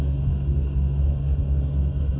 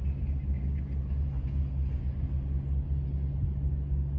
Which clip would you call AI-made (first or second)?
first